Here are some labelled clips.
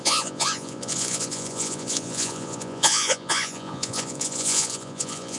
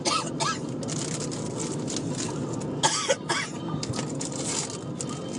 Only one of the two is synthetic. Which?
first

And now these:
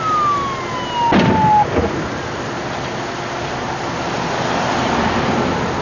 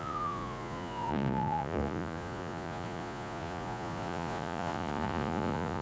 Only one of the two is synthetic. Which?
second